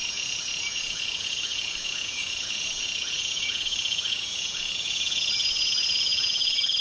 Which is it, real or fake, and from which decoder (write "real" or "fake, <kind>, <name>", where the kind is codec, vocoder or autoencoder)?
fake, vocoder, Vocos